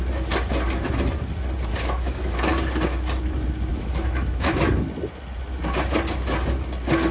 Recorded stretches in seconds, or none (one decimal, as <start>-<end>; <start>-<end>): 0.0-1.7; 2.5-3.7; 4.7-7.1